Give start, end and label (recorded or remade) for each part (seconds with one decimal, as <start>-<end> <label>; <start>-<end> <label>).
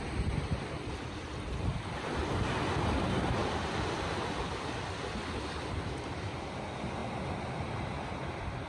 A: 0.0-8.7 recorded